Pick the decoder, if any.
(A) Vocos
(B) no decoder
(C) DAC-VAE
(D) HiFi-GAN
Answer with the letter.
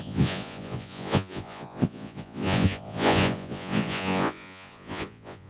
A